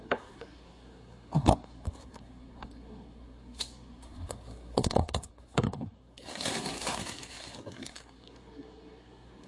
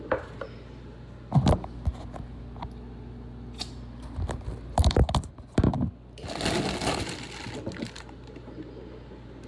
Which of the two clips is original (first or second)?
second